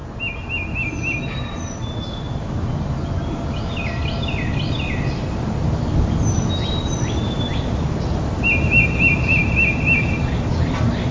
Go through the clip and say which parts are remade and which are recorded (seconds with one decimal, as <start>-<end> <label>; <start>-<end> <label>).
0.0-11.1 recorded